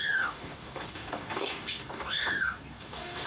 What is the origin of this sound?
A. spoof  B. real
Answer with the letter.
A